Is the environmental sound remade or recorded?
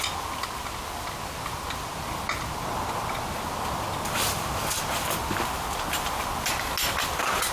recorded